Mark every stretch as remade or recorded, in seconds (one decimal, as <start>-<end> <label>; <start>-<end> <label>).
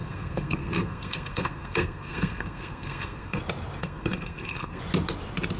0.0-3.4 remade; 3.4-3.8 recorded; 3.8-4.8 remade; 4.8-5.6 recorded